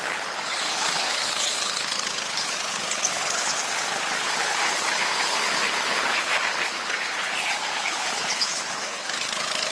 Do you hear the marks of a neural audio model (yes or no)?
yes